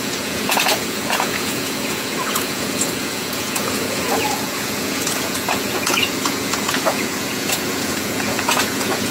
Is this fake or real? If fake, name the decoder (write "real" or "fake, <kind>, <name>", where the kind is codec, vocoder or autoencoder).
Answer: fake, vocoder, Vocos